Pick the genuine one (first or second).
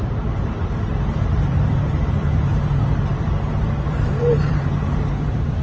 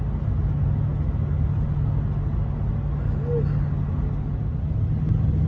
second